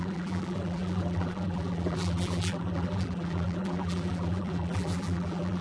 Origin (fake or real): fake